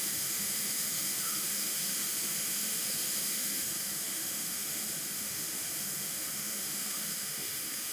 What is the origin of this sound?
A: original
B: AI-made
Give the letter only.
B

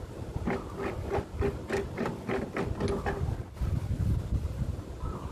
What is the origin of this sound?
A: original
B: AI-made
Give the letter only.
A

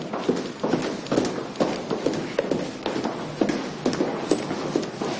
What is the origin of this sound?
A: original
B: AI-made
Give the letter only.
A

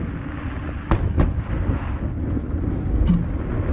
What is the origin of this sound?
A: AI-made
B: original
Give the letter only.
B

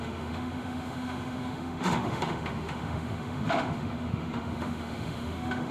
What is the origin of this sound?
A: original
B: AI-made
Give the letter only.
B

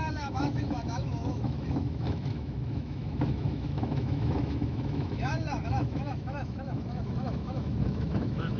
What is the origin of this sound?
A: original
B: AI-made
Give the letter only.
B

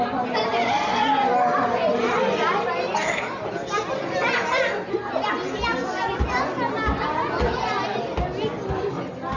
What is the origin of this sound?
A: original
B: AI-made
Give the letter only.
A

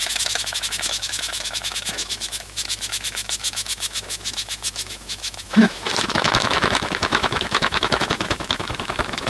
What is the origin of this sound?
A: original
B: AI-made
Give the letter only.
B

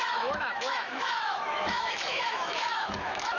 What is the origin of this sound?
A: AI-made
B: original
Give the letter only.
A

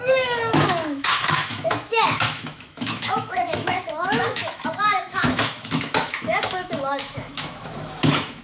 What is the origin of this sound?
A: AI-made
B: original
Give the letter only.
A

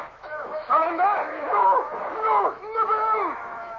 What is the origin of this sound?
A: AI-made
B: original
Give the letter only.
A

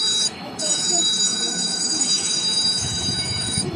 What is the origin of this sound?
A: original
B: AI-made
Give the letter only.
B